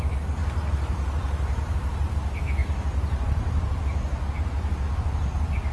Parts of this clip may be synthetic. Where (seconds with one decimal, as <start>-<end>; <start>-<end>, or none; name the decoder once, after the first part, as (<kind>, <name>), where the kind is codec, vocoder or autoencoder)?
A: 0.4-2.1 (vocoder, BigVGAN v2); 2.6-3.8